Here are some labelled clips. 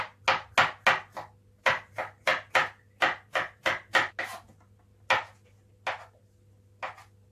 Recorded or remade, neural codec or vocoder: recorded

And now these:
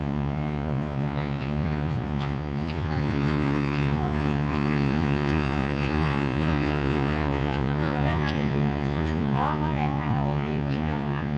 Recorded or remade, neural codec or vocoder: remade, vocoder, Vocos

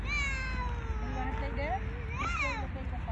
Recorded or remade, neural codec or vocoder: recorded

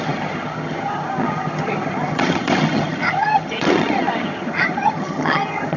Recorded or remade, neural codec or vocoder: remade, vocoder, HiFi-GAN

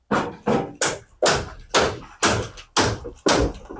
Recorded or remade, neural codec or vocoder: recorded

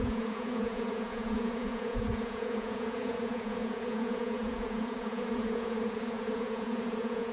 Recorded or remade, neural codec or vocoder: remade, vocoder, Vocos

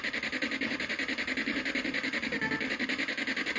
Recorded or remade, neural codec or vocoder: recorded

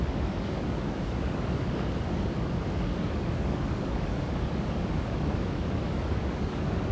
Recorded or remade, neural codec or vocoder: remade, codec, DAC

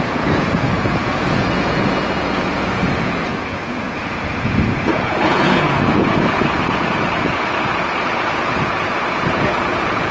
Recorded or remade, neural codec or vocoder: remade, vocoder, Vocos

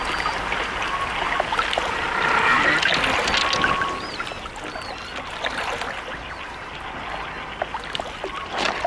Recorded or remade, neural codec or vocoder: recorded